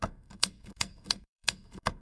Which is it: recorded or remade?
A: remade